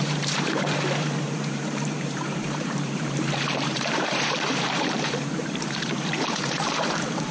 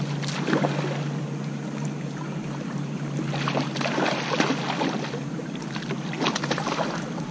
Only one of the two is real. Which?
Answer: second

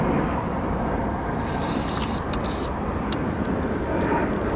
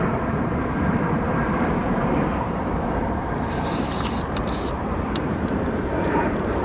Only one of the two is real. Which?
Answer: first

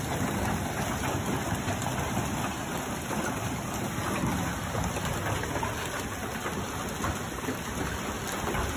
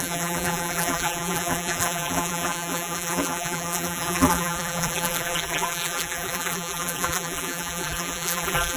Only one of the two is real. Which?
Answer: first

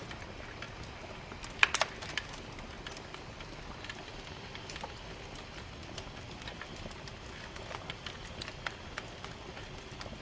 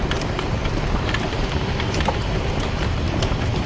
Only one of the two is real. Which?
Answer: first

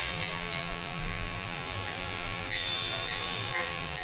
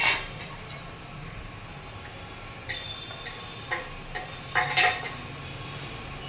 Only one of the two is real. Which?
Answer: second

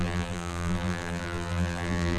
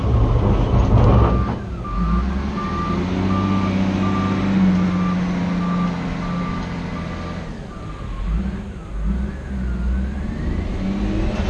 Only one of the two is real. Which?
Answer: second